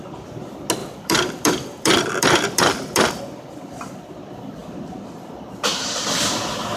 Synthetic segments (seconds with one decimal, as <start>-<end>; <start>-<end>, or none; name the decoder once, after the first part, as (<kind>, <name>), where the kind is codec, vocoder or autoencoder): 0.8-3.2 (vocoder, BigVGAN v2)